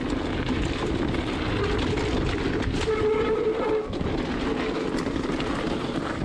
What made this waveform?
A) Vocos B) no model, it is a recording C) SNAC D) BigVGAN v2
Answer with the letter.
B